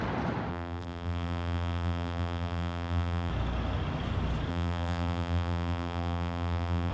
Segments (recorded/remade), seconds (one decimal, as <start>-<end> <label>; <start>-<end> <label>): 0.0-0.5 recorded; 0.5-3.3 remade; 3.3-4.5 recorded; 4.5-6.9 remade

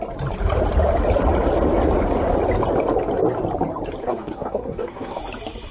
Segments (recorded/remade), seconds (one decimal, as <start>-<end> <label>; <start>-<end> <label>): 0.0-4.0 recorded; 4.0-5.2 remade; 5.2-5.7 recorded

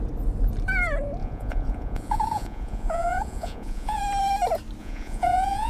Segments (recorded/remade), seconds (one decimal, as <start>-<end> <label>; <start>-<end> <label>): 0.0-1.2 recorded; 1.2-4.0 remade; 4.0-4.8 recorded; 4.8-5.7 remade

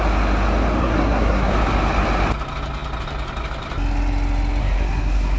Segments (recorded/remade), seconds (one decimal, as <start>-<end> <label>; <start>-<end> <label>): 0.0-0.8 recorded; 0.8-1.5 remade; 1.5-4.6 recorded; 4.6-5.4 remade

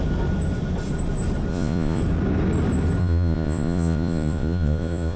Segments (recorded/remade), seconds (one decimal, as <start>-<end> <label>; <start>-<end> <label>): 0.0-1.5 recorded; 1.5-2.0 remade; 2.0-3.0 recorded; 3.0-5.2 remade

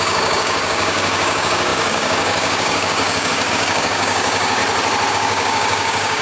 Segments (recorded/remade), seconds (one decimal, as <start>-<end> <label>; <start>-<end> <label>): 0.0-4.6 remade; 4.6-5.1 recorded; 5.1-6.2 remade

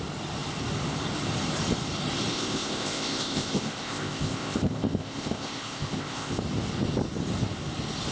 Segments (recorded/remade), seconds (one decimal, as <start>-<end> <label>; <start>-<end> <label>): 0.0-2.3 recorded; 2.3-6.4 remade; 6.4-8.1 recorded